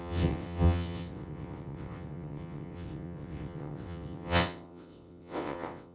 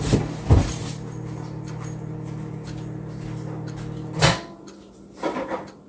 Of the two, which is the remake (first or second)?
first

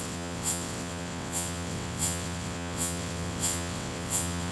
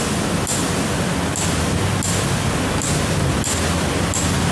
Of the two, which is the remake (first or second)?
first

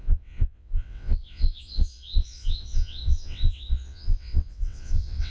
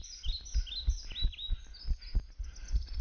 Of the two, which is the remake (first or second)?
first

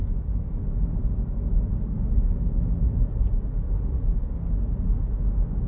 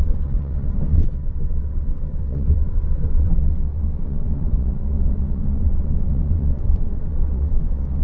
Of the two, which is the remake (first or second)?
second